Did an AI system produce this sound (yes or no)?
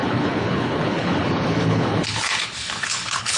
yes